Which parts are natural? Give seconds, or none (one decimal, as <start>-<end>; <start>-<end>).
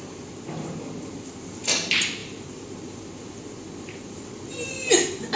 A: 0.0-5.4